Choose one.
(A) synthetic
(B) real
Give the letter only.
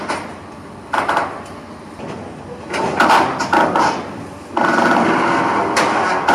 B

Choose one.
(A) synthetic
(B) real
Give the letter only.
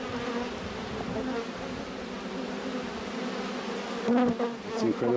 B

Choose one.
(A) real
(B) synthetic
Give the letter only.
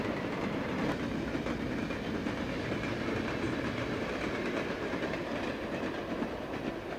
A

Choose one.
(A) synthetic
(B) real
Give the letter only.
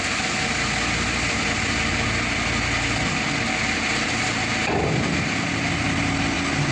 B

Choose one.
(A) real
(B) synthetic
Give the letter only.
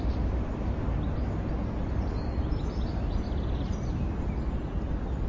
A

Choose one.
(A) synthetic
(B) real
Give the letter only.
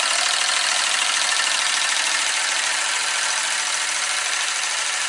B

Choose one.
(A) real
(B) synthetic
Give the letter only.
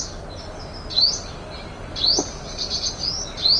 A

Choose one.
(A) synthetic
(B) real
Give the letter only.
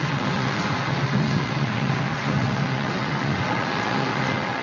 A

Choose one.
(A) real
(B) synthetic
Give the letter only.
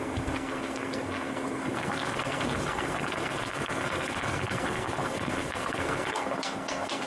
B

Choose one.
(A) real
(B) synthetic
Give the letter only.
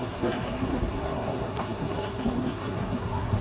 B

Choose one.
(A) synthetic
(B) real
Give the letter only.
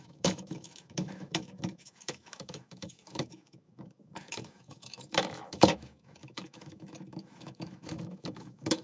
A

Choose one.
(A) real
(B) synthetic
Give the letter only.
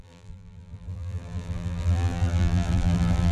B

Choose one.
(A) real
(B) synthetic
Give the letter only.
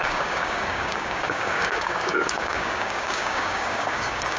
B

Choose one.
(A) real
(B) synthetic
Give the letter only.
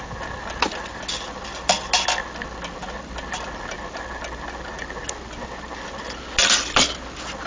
A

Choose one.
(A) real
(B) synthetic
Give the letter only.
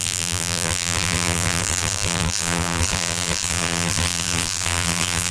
B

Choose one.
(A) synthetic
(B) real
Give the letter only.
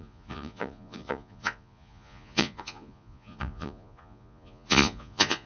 A